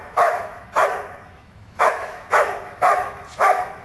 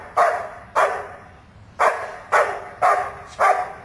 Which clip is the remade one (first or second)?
first